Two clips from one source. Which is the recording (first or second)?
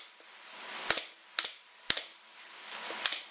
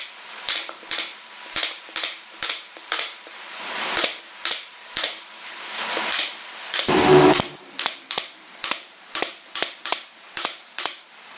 first